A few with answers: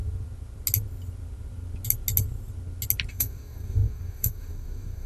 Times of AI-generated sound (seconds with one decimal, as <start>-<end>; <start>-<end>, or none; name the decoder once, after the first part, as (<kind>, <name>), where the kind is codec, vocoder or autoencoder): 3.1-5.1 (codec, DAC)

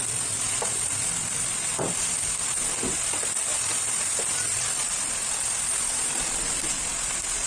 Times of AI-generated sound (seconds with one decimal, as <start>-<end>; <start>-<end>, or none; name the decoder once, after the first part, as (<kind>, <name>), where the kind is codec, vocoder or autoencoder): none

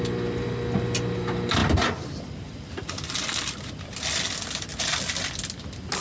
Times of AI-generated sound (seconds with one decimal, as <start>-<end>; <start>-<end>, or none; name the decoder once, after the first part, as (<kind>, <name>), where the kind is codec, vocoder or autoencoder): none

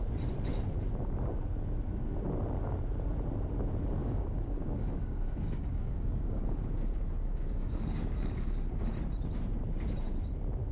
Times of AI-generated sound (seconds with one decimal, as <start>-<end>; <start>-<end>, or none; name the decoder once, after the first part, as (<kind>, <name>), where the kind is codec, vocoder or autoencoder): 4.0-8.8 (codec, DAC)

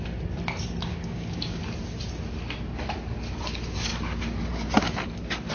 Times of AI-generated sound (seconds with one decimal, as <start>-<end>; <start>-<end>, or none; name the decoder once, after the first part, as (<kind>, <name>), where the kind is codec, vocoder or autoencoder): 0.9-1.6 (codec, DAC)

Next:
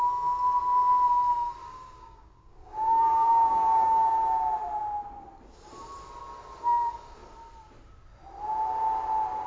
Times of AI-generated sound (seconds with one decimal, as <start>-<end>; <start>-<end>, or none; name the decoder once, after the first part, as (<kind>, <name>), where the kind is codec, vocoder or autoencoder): 1.6-4.1 (codec, DAC)